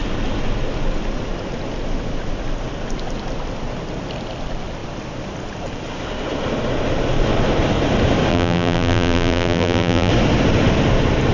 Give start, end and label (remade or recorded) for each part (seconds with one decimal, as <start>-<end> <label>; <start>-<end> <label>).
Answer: 0.0-8.3 recorded; 8.3-10.1 remade; 10.1-11.3 recorded